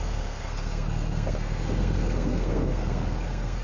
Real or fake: fake